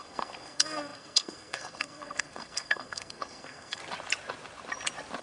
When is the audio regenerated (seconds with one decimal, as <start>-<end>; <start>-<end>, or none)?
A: 0.0-3.8